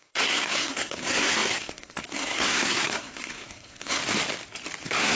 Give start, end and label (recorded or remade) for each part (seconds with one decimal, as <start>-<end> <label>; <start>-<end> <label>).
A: 0.0-4.0 remade; 4.0-4.8 recorded; 4.8-5.2 remade